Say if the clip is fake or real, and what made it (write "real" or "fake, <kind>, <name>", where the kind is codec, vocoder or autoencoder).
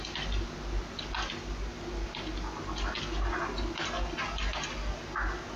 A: real